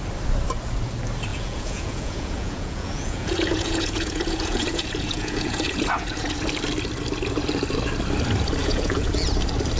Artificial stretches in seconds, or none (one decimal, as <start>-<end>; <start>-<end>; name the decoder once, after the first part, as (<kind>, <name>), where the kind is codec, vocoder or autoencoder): 1.3-6.4 (vocoder, Vocos); 8.6-9.1